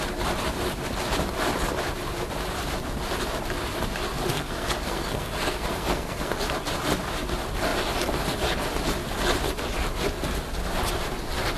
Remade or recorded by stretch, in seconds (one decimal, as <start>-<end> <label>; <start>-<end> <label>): 0.0-4.3 recorded; 4.3-6.3 remade; 6.3-11.6 recorded